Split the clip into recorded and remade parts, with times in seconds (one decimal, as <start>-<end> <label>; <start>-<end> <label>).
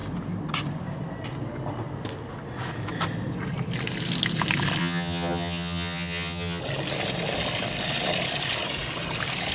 0.0-4.8 recorded; 4.8-6.6 remade; 6.6-9.5 recorded